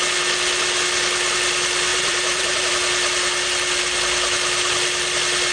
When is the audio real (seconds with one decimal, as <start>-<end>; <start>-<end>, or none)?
0.0-1.9; 2.7-5.5